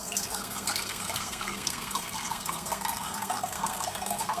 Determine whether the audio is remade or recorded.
remade